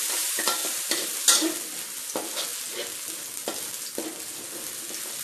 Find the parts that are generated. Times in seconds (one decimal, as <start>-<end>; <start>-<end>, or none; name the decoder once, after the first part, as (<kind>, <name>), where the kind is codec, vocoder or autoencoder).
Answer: 0.6-1.2 (vocoder, BigVGAN v2)